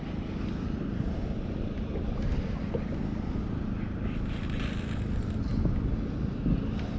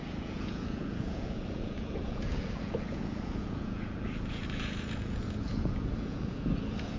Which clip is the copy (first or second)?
second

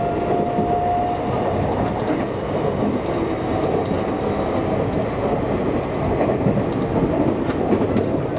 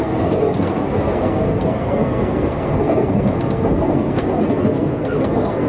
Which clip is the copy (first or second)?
second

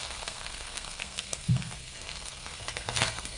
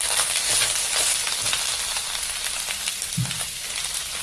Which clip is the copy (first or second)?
first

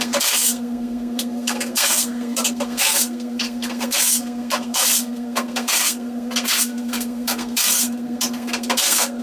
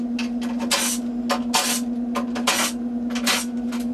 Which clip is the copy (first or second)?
first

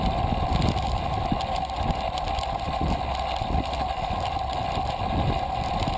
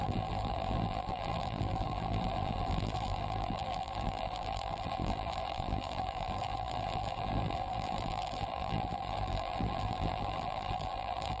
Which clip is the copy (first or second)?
second